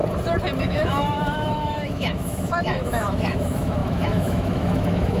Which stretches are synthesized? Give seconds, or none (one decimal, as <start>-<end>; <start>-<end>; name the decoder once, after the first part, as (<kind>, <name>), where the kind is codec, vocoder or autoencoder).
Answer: 0.6-5.2 (autoencoder, DAC-VAE)